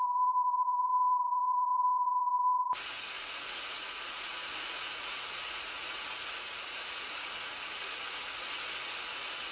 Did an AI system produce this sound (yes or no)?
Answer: yes